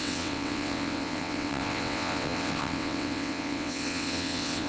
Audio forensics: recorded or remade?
remade